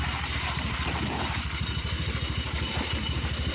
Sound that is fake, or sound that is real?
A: fake